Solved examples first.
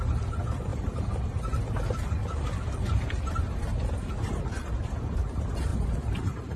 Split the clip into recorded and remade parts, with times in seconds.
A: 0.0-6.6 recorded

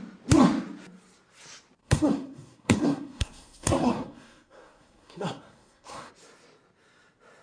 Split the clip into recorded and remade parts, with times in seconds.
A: 0.0-1.8 recorded; 1.8-6.1 remade; 6.1-7.4 recorded

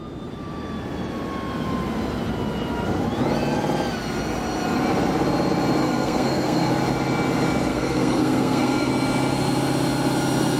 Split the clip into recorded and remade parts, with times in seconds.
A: 0.0-5.8 recorded; 5.8-6.7 remade; 6.7-7.7 recorded; 7.7-8.9 remade; 8.9-10.6 recorded

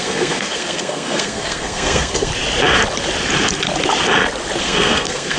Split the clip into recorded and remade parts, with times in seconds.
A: 0.0-2.3 remade; 2.3-4.6 recorded; 4.6-5.4 remade

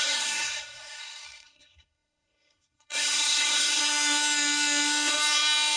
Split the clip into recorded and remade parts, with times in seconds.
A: 0.0-3.8 remade; 3.8-5.8 recorded

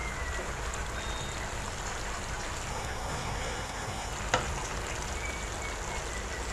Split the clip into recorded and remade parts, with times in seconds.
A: 0.0-2.7 recorded; 2.7-4.1 remade; 4.1-6.5 recorded